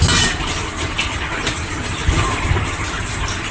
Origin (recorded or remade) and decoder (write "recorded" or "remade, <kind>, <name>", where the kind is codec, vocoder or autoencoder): recorded